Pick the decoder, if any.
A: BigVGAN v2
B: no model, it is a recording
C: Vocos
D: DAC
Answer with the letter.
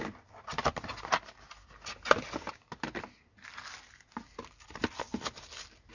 B